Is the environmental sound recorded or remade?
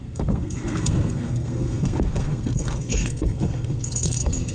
remade